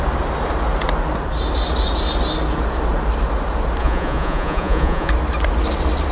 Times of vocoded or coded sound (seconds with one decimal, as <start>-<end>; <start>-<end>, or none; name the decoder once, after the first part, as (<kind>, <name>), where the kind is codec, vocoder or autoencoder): 3.8-5.1 (vocoder, Vocos)